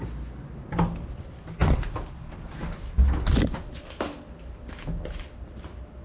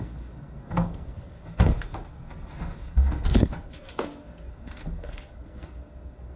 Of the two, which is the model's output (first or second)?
second